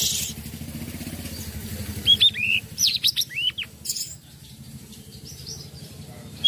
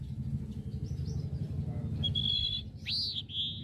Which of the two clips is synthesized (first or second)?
first